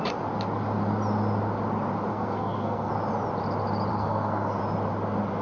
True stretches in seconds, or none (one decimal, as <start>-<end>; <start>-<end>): 0.0-2.1; 2.9-3.9; 4.6-5.4